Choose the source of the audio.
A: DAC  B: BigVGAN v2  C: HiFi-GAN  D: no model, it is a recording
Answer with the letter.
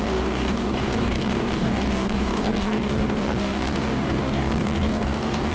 A